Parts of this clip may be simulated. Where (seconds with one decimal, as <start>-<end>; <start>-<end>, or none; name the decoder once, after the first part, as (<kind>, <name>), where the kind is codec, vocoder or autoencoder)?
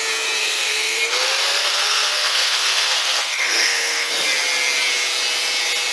0.4-1.0 (codec, SNAC); 1.6-4.1